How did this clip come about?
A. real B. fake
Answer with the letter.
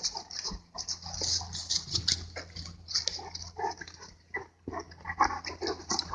A